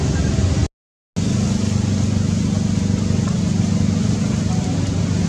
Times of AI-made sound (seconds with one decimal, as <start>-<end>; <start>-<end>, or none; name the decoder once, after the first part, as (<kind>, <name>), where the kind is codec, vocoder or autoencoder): none